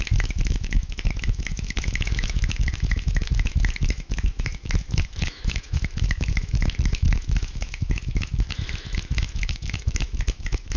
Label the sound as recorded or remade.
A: remade